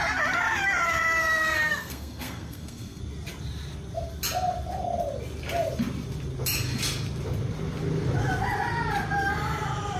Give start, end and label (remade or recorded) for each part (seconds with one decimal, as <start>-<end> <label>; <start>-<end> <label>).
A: 0.0-1.2 recorded; 1.2-3.0 remade; 3.0-10.0 recorded